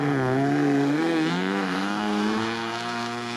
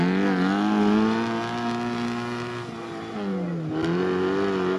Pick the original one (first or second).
second